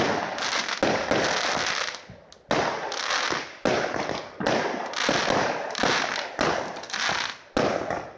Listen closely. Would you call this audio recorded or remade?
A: recorded